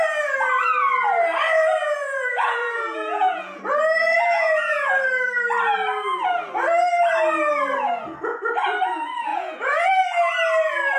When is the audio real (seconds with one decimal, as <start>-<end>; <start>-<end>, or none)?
0.0-1.8; 3.6-4.0; 4.9-9.3; 9.9-11.0